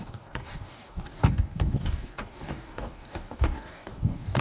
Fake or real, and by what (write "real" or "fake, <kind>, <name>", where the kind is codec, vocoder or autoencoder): fake, codec, DAC